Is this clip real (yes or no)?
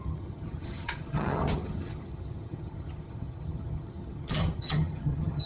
no